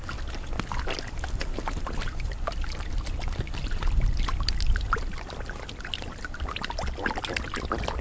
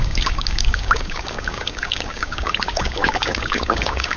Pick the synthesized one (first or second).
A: second